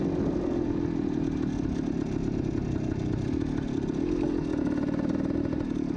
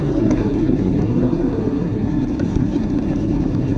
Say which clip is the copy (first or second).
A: second